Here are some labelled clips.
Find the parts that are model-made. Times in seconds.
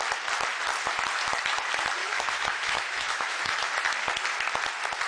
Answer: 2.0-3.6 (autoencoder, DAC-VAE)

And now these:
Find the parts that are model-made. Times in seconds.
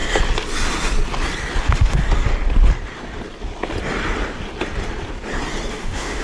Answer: 1.6-2.0 (autoencoder, DAC-VAE); 5.7-6.2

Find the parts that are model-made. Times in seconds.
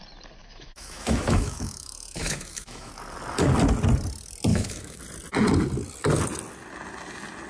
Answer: 0.4-2.9 (autoencoder, DAC-VAE); 4.5-5.0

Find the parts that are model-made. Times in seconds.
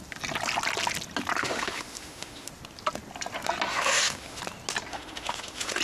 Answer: 1.4-2.5 (autoencoder, DAC-VAE); 3.7-4.4; 4.9-5.8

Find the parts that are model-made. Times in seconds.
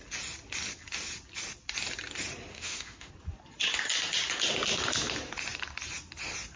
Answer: 2.5-3.1 (autoencoder, DAC-VAE)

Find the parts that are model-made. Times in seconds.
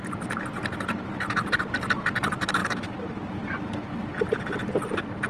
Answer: none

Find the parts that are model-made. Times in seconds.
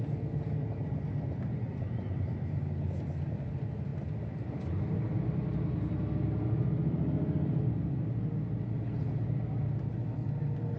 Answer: none